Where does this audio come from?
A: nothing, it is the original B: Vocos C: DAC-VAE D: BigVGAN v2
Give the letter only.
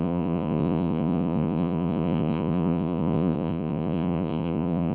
B